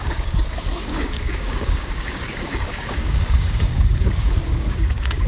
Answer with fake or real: fake